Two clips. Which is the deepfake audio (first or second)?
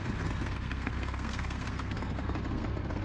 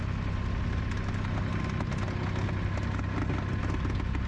first